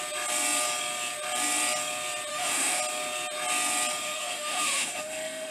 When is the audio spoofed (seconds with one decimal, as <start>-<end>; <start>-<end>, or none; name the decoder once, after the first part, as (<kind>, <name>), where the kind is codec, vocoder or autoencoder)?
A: 2.3-2.8 (autoencoder, DAC-VAE); 4.0-5.5